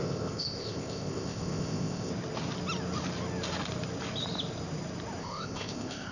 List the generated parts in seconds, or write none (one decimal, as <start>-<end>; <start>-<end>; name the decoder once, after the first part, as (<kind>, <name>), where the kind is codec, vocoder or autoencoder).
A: 0.0-2.1 (codec, ZipCodec); 5.2-6.1